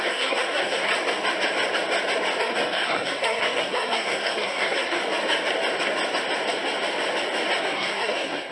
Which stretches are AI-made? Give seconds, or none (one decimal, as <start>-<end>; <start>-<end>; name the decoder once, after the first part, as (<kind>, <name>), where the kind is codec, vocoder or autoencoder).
0.0-0.9 (codec, SNAC); 2.4-5.0; 7.6-8.5